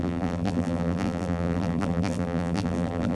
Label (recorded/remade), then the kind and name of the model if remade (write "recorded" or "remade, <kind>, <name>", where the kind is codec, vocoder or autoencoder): remade, vocoder, BigVGAN v2